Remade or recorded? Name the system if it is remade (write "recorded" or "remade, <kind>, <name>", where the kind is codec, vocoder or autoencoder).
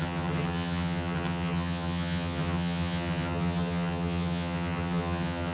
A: remade, vocoder, HiFi-GAN